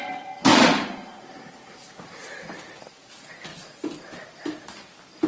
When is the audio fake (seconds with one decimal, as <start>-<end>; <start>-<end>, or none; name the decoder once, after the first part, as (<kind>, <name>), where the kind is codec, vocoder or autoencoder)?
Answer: 0.5-1.2 (vocoder, Vocos)